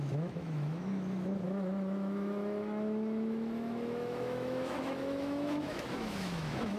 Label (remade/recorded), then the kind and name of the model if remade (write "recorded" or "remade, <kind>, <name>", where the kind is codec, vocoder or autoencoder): remade, autoencoder, DAC-VAE